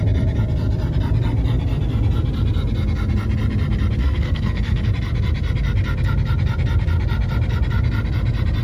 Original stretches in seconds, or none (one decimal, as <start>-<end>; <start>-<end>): 0.0-4.0; 4.9-8.6